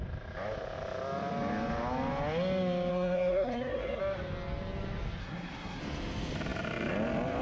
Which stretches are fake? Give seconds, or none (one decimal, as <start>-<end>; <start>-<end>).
2.9-4.0; 5.2-5.8